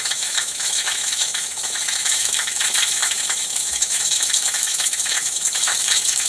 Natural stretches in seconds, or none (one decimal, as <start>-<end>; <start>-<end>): none

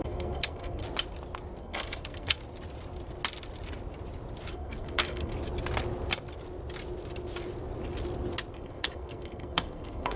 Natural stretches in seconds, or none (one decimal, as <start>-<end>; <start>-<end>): 0.8-1.6; 2.4-4.5; 5.3-8.5

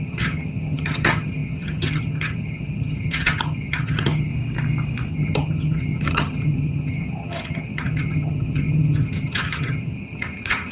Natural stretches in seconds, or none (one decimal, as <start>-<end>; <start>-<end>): 4.3-5.1

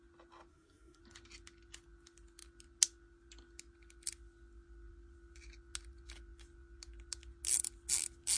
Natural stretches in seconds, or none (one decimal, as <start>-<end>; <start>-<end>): 0.0-0.5; 1.0-8.4

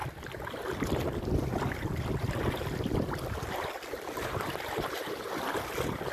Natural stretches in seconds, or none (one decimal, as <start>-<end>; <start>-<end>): 2.4-6.1

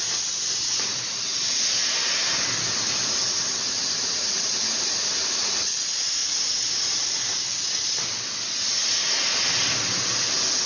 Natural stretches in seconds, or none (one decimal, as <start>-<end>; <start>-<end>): 0.0-10.7

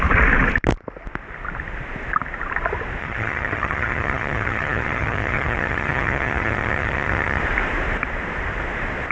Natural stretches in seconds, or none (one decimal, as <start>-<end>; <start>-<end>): 0.0-3.0; 7.4-9.1